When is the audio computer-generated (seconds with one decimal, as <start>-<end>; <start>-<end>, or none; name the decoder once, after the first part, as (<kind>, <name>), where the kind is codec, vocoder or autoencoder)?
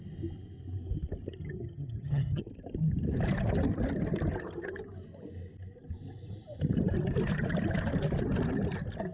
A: 1.4-2.4 (vocoder, HiFi-GAN)